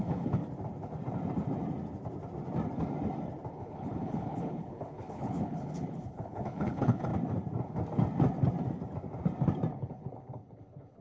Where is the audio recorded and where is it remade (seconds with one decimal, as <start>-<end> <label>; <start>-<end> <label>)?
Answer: 0.0-0.4 remade; 0.4-3.5 recorded; 3.5-7.1 remade; 7.1-9.7 recorded; 9.7-11.0 remade